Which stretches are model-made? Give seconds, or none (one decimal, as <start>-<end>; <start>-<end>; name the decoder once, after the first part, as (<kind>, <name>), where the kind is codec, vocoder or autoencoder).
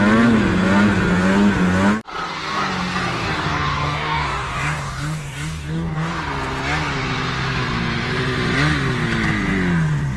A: 3.1-6.1 (codec, DAC)